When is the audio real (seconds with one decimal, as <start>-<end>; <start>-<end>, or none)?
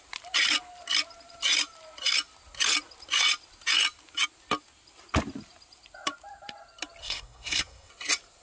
0.0-7.0; 7.9-8.4